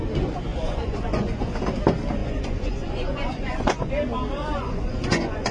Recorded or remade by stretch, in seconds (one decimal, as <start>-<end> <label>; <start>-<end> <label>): 0.0-0.5 recorded; 0.5-1.4 remade; 1.4-2.2 recorded; 2.2-3.9 remade; 3.9-4.4 recorded; 4.4-5.5 remade